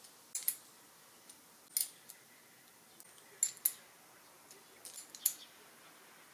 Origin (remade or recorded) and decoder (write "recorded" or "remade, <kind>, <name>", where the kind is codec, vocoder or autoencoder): recorded